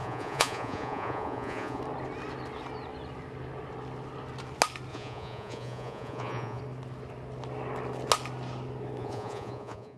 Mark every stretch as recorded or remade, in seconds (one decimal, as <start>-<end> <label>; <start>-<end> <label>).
0.0-1.8 remade; 1.8-4.9 recorded; 4.9-6.6 remade; 6.6-9.0 recorded; 9.0-10.0 remade